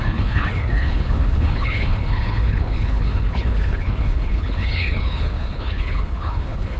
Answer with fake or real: fake